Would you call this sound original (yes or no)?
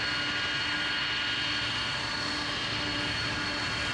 yes